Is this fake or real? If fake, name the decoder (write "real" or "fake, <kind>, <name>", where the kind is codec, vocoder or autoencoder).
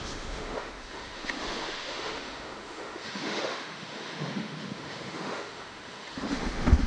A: fake, autoencoder, DAC-VAE